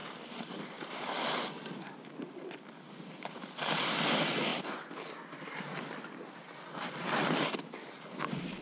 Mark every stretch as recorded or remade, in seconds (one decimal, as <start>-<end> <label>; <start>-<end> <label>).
0.0-8.6 recorded